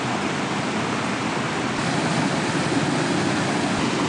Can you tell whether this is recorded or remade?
recorded